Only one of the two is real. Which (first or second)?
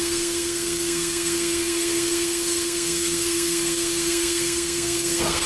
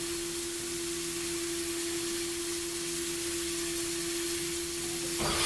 second